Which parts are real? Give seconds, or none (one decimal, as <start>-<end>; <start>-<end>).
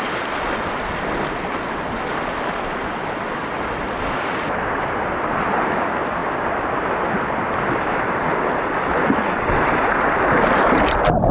0.0-11.3